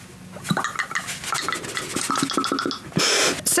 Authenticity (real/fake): real